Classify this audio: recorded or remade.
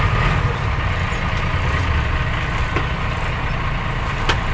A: recorded